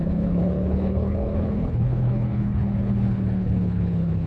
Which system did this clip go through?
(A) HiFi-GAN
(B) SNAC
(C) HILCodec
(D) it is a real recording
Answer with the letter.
C